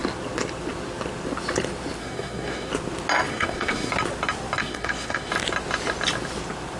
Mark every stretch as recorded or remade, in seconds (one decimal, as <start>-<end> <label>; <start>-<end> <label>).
0.0-2.0 recorded; 2.0-2.7 remade; 2.7-3.3 recorded; 3.3-3.9 remade; 3.9-4.6 recorded; 4.6-5.3 remade; 5.3-6.8 recorded